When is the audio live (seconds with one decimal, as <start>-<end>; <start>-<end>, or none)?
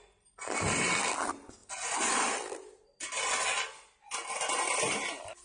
0.0-5.4